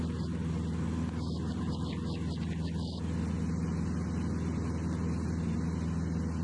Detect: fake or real real